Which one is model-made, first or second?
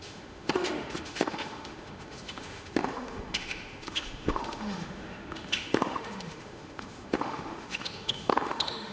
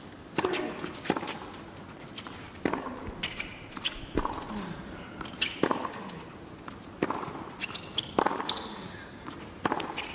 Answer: first